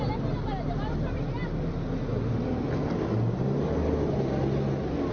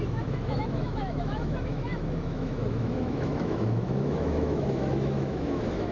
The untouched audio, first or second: first